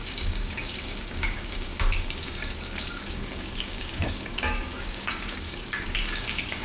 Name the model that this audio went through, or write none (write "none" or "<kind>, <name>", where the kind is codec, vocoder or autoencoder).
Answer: codec, DAC